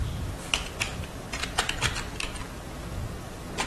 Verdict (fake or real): real